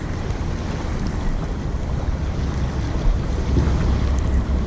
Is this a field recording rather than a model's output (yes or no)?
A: yes